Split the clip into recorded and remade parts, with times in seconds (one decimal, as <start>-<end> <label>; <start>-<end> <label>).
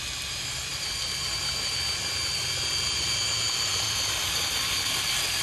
0.0-5.4 recorded